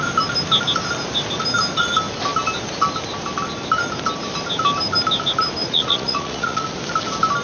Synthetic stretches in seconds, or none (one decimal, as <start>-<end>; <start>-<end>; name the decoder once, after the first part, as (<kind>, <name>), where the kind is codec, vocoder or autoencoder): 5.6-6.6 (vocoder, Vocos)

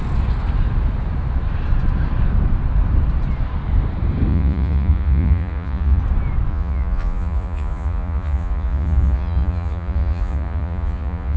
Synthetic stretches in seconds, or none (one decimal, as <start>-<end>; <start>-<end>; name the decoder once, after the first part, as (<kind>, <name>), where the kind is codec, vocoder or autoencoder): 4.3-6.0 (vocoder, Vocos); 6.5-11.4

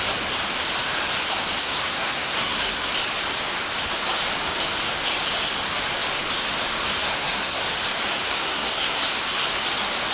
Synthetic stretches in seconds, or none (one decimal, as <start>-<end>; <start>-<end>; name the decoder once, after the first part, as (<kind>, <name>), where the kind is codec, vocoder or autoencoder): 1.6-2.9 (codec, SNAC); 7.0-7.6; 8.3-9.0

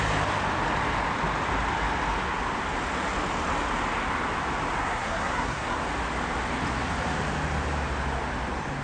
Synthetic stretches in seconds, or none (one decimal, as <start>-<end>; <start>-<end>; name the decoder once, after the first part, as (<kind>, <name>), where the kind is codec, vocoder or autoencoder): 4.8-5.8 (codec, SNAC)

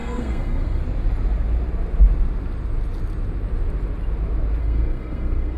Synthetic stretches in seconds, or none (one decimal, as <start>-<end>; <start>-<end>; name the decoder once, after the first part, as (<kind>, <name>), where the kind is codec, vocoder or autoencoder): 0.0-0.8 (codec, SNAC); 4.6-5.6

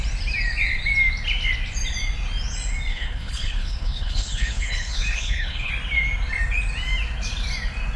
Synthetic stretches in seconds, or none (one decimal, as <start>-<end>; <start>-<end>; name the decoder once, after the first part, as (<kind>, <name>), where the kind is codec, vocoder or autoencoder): 2.9-5.7 (codec, HILCodec)